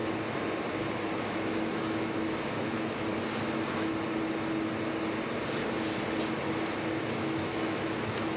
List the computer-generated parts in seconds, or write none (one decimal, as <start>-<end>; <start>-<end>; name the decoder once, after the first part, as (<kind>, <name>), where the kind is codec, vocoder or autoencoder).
0.9-3.1 (autoencoder, DAC-VAE); 7.2-8.4